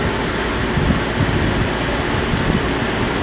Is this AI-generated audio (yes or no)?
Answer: no